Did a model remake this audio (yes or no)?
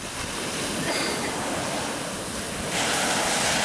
no